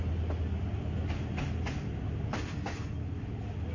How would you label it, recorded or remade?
recorded